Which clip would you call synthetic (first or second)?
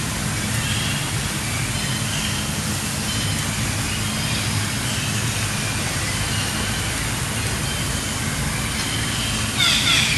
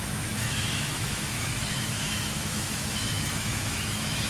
second